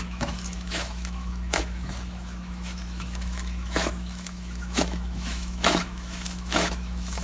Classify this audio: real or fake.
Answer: fake